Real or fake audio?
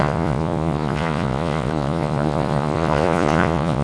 fake